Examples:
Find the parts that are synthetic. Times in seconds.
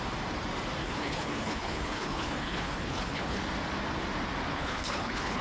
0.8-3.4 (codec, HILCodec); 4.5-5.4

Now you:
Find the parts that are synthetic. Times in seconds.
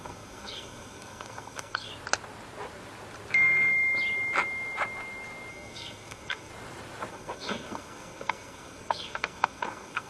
0.0-1.9 (codec, SNAC); 5.5-6.5; 7.1-10.1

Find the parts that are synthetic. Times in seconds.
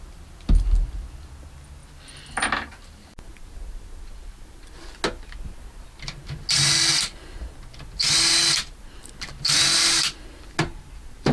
none